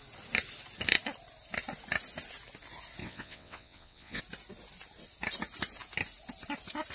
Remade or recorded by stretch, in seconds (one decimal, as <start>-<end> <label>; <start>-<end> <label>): 0.0-3.0 recorded; 3.0-4.2 remade; 4.2-6.9 recorded